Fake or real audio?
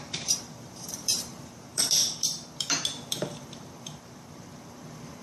fake